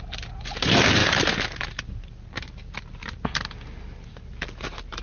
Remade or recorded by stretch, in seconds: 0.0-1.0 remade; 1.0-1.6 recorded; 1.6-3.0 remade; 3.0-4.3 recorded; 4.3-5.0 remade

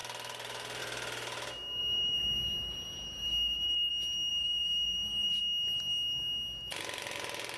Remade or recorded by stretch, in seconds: 0.0-1.8 recorded; 1.8-3.9 remade; 3.9-4.3 recorded; 4.3-5.4 remade; 5.4-7.6 recorded

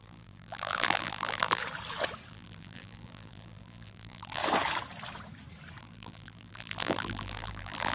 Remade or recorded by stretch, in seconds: 0.0-1.6 remade; 1.6-2.3 recorded; 2.3-4.4 remade; 4.4-5.8 recorded; 5.8-7.9 remade

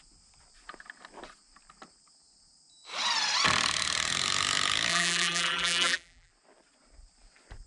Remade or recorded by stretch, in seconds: 0.0-4.9 recorded; 4.9-6.3 remade; 6.3-7.7 recorded

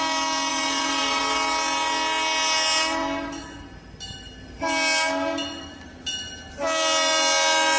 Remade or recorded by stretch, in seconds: 0.0-0.5 recorded; 0.5-1.2 remade; 1.2-7.8 recorded